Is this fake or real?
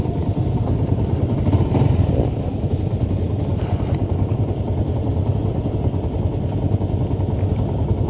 real